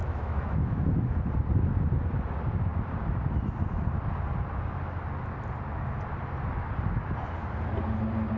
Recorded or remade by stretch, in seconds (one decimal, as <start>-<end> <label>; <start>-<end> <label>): 0.0-1.2 remade; 1.2-8.4 recorded